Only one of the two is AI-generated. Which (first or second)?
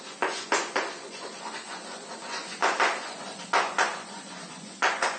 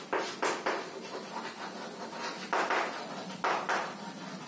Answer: first